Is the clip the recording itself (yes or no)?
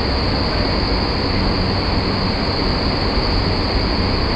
yes